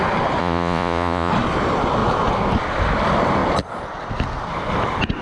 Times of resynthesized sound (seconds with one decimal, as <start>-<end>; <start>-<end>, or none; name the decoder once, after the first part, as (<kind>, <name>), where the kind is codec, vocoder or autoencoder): 0.4-1.3 (vocoder, Vocos)